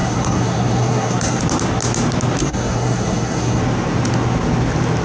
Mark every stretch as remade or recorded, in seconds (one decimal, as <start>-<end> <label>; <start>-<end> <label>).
0.0-1.4 remade; 1.4-2.4 recorded; 2.4-3.6 remade; 3.6-5.0 recorded